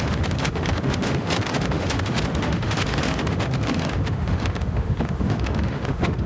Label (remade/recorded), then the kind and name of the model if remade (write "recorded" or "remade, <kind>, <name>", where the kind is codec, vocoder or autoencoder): remade, autoencoder, DAC-VAE